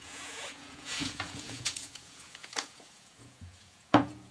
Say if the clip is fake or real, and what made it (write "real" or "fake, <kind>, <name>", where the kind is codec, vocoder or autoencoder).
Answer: fake, vocoder, Vocos